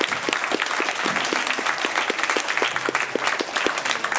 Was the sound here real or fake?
real